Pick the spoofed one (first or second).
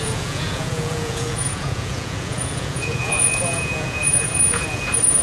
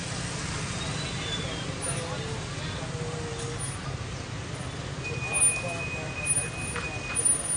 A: first